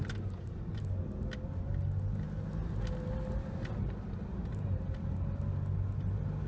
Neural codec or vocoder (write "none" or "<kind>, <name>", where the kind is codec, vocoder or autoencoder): none